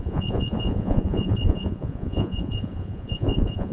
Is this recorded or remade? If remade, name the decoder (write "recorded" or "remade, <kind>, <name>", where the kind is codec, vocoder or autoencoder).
remade, vocoder, Vocos